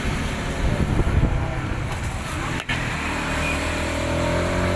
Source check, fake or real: real